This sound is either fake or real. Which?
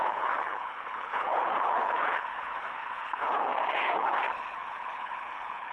fake